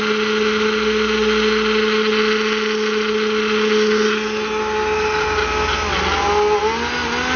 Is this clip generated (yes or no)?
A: no